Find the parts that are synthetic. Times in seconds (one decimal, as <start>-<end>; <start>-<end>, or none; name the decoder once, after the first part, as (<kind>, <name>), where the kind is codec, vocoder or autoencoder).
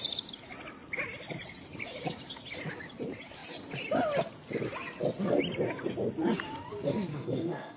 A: 7.1-7.8 (codec, SNAC)